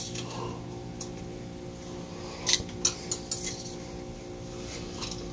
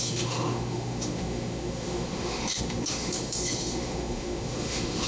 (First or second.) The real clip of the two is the first